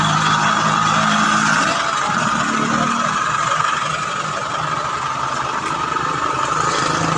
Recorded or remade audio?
recorded